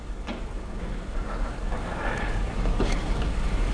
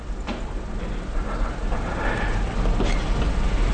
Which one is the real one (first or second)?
second